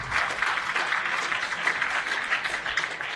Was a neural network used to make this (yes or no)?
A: no